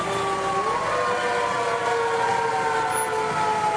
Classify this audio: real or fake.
real